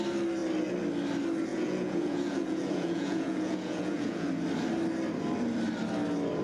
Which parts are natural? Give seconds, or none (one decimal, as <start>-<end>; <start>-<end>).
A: 0.0-1.5; 4.3-6.4